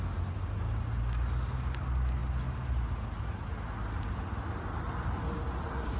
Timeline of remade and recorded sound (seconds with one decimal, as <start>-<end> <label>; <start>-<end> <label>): 0.0-6.0 recorded